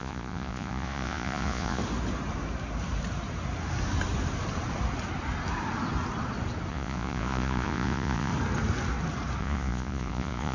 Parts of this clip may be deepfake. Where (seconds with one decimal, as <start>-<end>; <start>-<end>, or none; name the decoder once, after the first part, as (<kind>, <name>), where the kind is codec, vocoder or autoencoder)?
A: 0.0-1.8 (vocoder, Vocos); 6.7-8.3; 9.4-10.5